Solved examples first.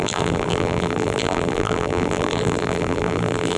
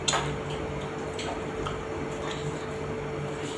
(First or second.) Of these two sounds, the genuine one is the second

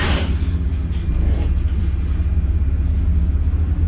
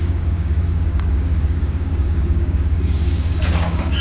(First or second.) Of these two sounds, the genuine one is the first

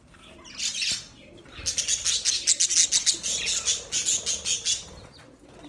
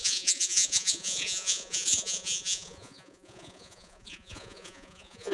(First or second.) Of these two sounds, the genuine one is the first